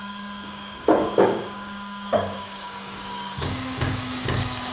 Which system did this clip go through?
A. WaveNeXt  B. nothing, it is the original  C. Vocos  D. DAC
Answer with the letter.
D